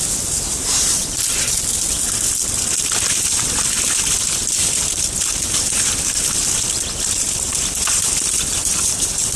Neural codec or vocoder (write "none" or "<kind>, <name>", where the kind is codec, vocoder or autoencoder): none